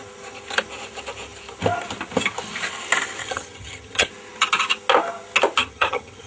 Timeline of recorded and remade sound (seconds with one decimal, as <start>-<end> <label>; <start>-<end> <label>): 0.0-3.2 recorded; 3.2-4.1 remade; 4.1-5.6 recorded; 5.6-6.3 remade